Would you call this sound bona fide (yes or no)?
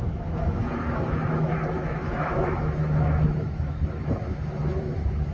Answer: no